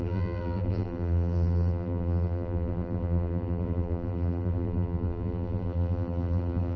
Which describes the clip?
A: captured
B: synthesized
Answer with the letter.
B